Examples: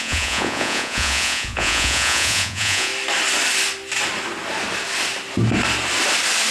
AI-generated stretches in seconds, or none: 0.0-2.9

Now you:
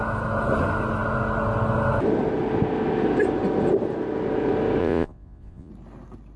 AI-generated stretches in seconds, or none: 4.8-5.7

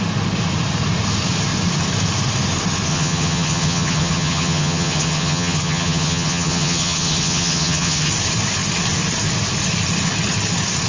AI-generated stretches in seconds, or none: 2.9-8.1

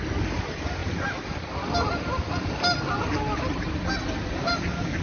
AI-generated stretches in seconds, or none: none